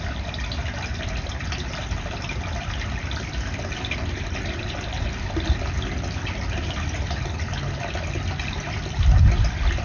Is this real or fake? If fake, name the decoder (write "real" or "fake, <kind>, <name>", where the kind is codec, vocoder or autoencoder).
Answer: real